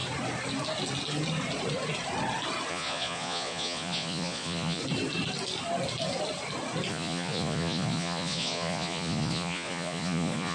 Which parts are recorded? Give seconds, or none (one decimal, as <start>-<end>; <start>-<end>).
0.0-2.7; 4.8-6.9